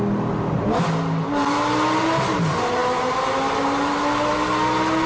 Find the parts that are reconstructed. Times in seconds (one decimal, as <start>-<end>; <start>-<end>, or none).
none